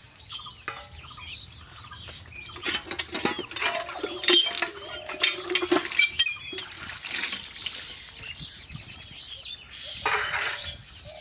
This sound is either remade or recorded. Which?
recorded